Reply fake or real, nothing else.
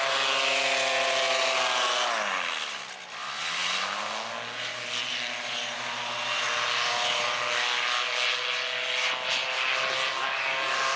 real